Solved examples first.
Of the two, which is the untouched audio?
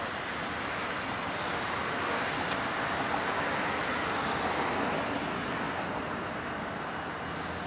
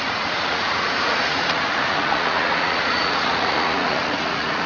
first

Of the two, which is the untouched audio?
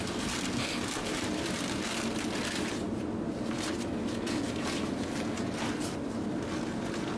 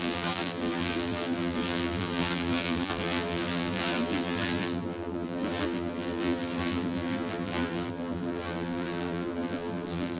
first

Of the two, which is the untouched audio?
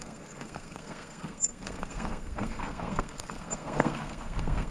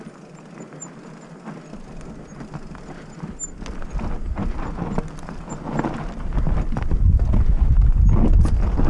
second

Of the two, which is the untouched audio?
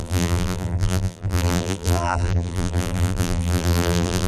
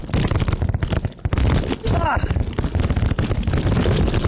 second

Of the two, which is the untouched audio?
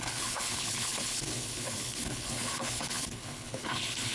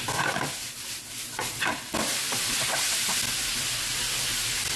second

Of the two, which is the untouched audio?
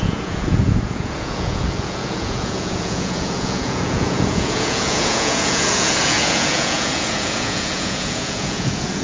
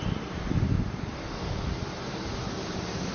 second